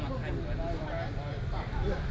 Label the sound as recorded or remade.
recorded